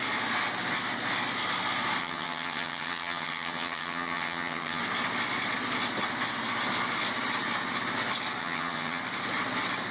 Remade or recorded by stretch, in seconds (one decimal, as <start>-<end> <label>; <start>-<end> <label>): 0.0-2.0 recorded; 2.0-4.8 remade; 4.8-8.4 recorded; 8.4-9.0 remade; 9.0-9.9 recorded